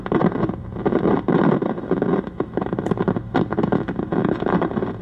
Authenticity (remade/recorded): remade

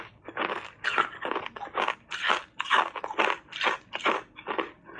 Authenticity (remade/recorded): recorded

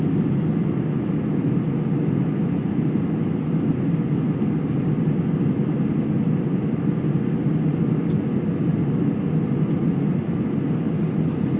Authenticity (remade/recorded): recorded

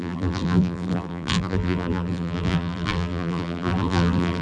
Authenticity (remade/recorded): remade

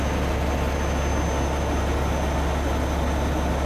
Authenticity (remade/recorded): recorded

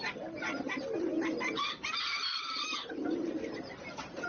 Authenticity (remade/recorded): remade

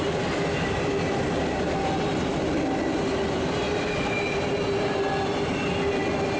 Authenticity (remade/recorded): recorded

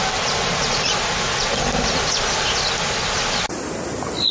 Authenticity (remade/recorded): recorded